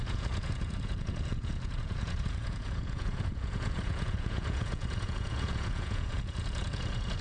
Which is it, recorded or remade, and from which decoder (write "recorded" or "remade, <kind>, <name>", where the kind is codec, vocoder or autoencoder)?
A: remade, vocoder, Vocos